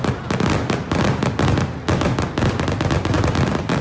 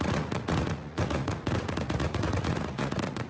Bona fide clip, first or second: first